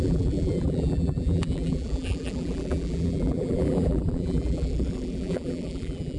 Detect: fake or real fake